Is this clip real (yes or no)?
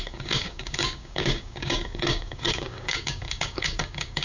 no